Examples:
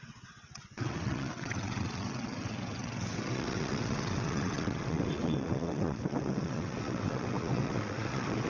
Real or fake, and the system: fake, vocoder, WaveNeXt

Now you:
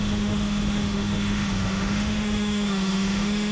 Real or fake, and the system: fake, autoencoder, DAC-VAE